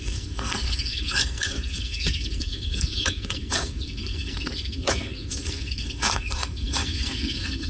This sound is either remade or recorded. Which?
remade